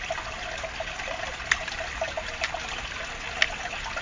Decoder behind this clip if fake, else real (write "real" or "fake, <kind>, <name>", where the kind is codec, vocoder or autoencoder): real